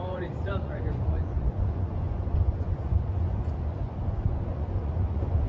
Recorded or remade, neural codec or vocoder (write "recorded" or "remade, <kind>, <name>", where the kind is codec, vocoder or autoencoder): remade, vocoder, Vocos